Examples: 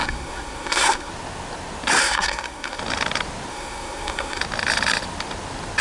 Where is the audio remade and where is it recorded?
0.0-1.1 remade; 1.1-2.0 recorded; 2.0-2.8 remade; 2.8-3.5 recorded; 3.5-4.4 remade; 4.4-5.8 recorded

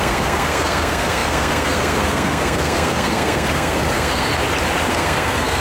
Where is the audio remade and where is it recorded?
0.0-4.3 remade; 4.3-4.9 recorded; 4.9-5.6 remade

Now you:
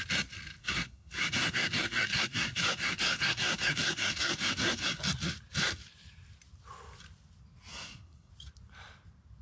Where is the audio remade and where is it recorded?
0.0-0.6 recorded; 0.6-5.0 remade; 5.0-7.7 recorded; 7.7-8.3 remade; 8.3-9.4 recorded

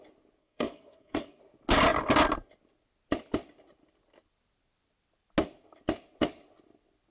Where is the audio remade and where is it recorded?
0.0-0.4 recorded; 0.4-1.4 remade; 1.4-7.1 recorded